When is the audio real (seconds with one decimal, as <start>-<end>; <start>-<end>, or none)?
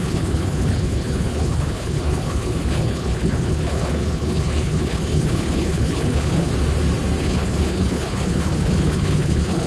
6.5-7.2